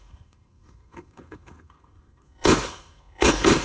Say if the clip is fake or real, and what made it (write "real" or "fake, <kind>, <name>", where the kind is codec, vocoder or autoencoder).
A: fake, codec, SNAC